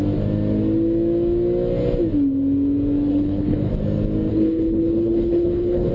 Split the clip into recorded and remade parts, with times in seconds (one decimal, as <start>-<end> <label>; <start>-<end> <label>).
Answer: 0.0-3.1 recorded; 3.1-3.7 remade; 3.7-4.3 recorded; 4.3-5.9 remade